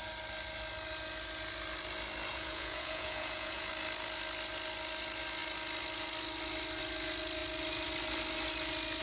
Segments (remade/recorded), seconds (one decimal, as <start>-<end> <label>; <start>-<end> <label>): 0.0-2.3 recorded; 2.3-3.7 remade; 3.7-9.0 recorded